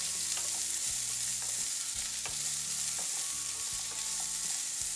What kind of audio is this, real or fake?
real